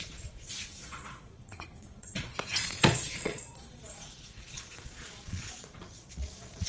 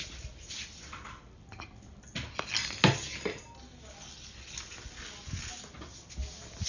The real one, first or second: second